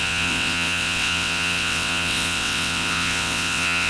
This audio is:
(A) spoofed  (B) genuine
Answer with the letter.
A